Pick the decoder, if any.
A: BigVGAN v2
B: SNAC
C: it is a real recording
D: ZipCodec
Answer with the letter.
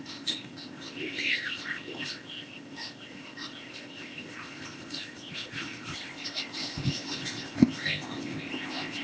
D